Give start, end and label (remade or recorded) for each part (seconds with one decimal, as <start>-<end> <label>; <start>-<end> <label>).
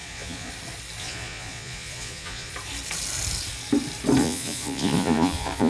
0.0-0.5 remade; 0.5-1.0 recorded; 1.0-2.5 remade; 2.5-4.2 recorded; 4.2-5.7 remade